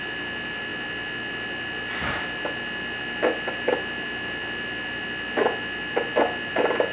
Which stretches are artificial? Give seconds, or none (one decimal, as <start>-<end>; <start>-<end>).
none

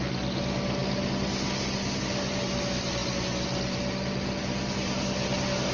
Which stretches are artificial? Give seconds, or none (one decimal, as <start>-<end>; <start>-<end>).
none